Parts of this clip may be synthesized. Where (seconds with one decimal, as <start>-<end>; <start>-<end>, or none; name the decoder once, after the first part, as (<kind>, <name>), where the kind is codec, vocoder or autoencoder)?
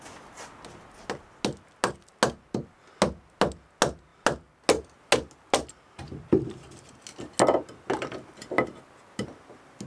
none